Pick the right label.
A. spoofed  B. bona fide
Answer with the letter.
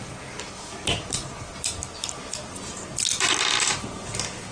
B